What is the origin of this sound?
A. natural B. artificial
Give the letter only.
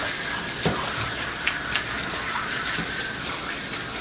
A